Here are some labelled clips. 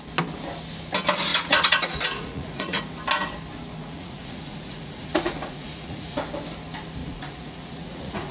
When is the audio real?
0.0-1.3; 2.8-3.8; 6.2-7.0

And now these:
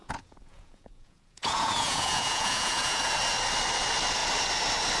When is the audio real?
3.0-5.0

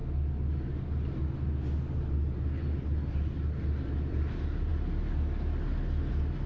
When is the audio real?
0.0-6.5